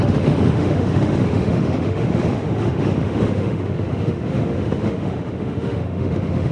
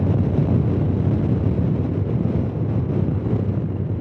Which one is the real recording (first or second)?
second